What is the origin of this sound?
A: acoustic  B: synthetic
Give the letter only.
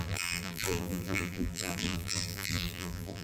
B